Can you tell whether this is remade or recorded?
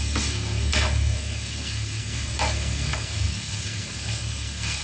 remade